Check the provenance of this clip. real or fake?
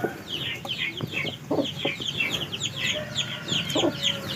real